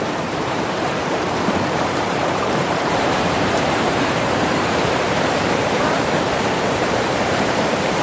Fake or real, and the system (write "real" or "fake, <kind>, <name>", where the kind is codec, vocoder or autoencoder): fake, vocoder, BigVGAN v2